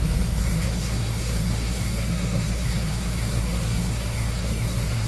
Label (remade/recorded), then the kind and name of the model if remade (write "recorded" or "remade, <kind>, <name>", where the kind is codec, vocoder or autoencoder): remade, codec, SNAC